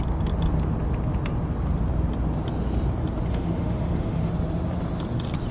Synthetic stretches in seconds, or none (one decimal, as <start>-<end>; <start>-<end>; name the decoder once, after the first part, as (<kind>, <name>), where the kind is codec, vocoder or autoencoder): 3.3-4.3 (autoencoder, DAC-VAE)